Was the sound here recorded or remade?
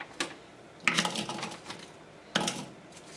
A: recorded